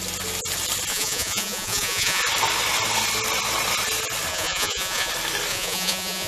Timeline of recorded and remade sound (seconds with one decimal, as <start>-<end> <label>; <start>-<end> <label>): 0.0-0.9 recorded; 0.9-2.2 remade; 2.2-4.3 recorded; 4.3-5.1 remade; 5.1-5.5 recorded; 5.5-6.3 remade